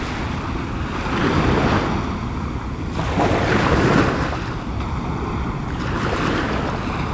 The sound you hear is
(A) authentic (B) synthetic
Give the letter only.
A